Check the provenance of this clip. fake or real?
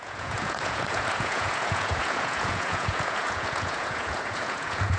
fake